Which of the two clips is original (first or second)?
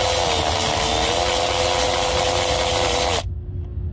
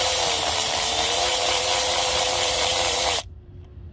first